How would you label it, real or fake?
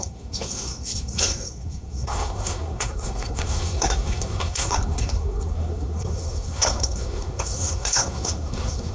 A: fake